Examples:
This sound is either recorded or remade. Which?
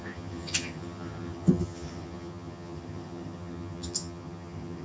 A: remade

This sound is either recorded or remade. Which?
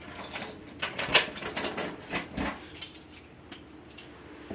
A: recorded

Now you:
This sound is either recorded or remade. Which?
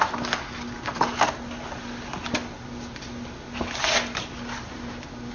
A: recorded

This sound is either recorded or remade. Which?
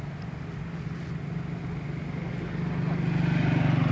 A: recorded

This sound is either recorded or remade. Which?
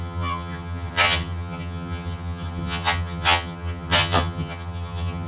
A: remade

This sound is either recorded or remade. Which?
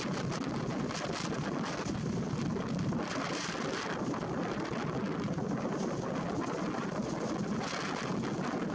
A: recorded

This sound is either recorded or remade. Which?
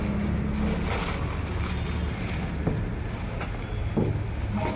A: recorded